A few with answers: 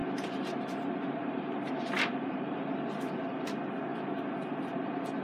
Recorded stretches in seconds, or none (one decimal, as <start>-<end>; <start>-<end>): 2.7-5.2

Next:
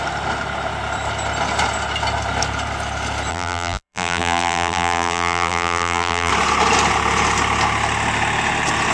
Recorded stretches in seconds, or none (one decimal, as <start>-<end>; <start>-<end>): 0.0-3.3; 6.3-8.9

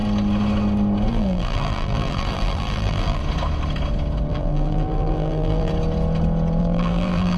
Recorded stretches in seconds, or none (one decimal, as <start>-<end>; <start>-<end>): 0.0-1.1; 3.2-4.3; 5.7-6.6

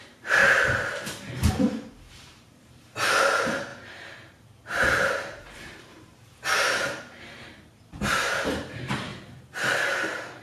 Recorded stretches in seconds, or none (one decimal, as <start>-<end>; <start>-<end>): 0.4-1.5; 9.1-10.4

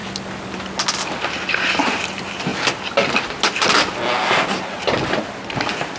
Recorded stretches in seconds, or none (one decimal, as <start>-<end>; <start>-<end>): 0.0-1.2; 2.5-6.0

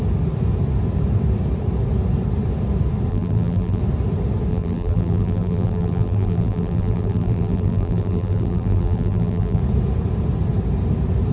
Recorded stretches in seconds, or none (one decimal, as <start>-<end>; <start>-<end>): 0.0-3.1; 3.8-4.5; 9.6-11.3

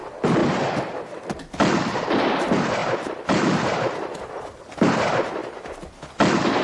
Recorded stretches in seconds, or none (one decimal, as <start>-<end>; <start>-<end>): 0.0-0.4; 1.5-2.8; 4.9-5.4; 6.0-6.6

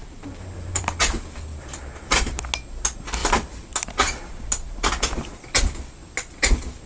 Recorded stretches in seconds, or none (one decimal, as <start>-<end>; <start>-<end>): 0.8-1.5; 2.4-6.9